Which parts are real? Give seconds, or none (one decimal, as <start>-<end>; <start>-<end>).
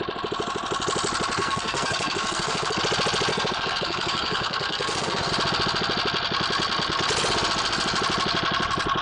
0.0-1.4; 2.8-3.3; 5.3-9.0